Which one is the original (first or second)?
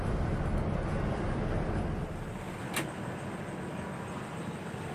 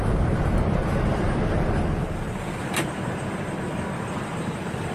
first